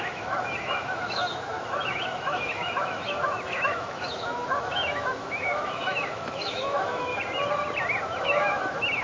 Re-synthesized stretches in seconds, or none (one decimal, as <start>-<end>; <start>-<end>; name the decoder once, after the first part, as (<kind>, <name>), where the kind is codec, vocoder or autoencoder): 0.0-7.1 (autoencoder, DAC-VAE); 8.0-9.0